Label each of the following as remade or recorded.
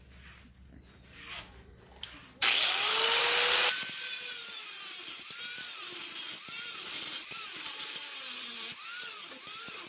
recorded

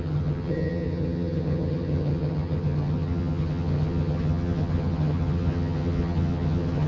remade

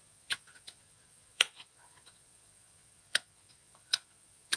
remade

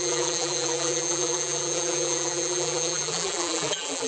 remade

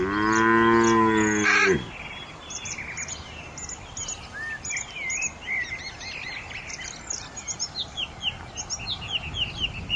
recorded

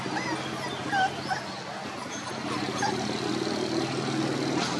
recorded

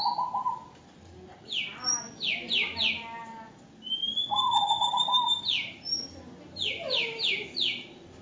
recorded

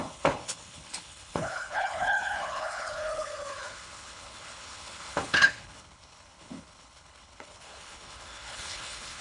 remade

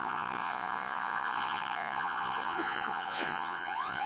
remade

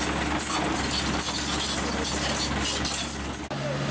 recorded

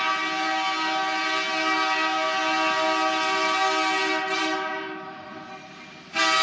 recorded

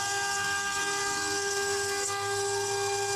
remade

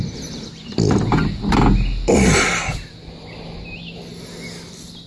recorded